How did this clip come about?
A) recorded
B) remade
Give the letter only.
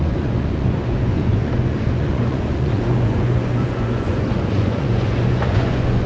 B